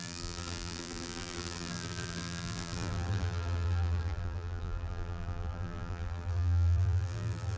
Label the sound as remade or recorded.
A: remade